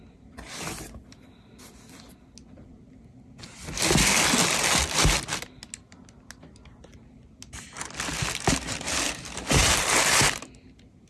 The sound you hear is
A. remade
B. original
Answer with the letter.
B